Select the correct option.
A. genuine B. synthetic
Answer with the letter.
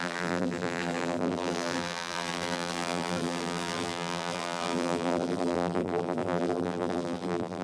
B